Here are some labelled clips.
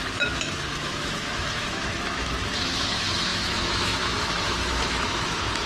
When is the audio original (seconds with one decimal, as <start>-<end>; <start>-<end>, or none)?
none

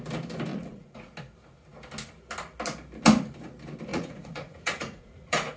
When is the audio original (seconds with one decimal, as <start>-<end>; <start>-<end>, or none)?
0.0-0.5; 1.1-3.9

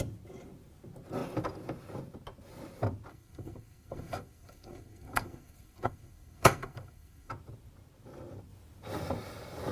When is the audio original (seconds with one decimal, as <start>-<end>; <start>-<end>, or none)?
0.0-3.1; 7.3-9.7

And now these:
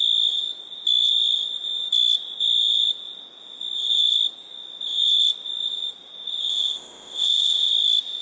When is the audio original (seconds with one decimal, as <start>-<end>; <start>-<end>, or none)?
0.0-6.5; 7.7-8.2